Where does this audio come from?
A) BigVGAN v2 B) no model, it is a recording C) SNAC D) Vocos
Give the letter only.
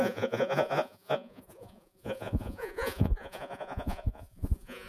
D